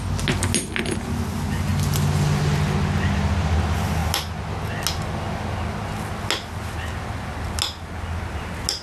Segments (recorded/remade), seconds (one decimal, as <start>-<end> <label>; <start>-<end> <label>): 0.0-8.8 recorded